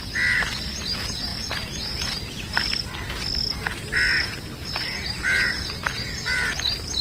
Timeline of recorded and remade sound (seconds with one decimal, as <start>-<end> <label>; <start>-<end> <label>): 0.0-1.3 recorded; 1.3-1.8 remade; 1.8-7.0 recorded